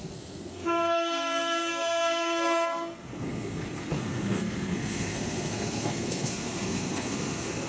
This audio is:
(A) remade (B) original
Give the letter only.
A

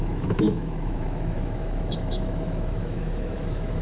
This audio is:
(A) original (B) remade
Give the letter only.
B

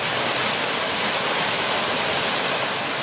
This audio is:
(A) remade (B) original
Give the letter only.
B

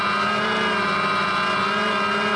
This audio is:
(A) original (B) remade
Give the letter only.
A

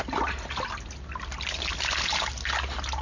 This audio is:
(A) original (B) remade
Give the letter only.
A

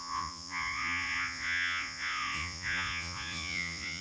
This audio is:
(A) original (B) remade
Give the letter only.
B